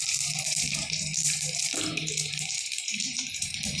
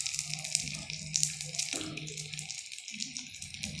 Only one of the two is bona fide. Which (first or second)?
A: second